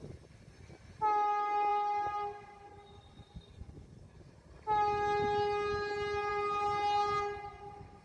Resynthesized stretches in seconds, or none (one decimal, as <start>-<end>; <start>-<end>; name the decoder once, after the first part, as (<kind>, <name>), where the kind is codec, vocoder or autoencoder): none